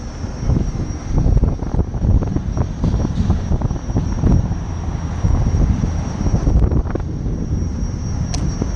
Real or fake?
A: real